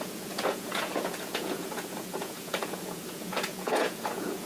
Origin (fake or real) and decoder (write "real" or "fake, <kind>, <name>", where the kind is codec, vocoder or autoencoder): fake, vocoder, Vocos